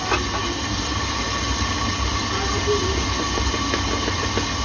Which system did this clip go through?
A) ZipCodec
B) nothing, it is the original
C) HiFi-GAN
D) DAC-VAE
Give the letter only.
B